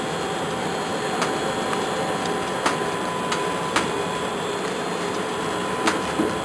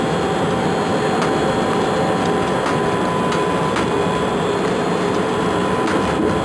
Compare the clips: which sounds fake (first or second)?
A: first